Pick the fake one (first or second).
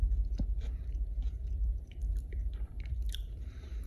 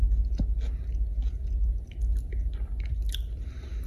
first